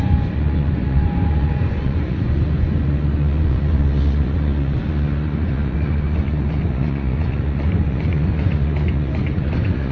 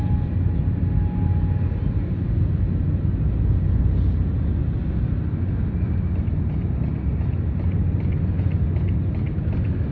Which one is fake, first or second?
first